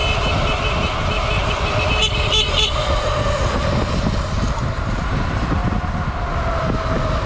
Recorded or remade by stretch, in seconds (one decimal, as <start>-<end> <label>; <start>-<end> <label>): 0.0-7.3 recorded